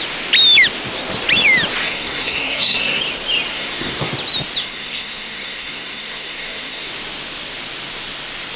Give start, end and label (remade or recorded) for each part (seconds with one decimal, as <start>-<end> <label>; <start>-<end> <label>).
0.0-1.8 recorded; 1.8-3.0 remade; 3.0-3.5 recorded; 3.5-4.1 remade; 4.1-4.6 recorded; 4.6-6.9 remade; 6.9-8.6 recorded